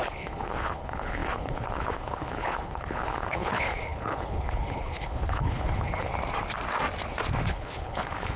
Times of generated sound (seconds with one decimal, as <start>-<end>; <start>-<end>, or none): 0.0-6.1; 7.5-8.4